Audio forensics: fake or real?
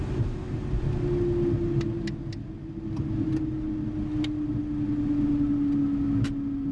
real